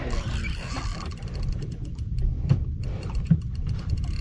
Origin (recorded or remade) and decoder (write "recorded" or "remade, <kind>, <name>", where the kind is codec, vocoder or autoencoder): remade, vocoder, BigVGAN v2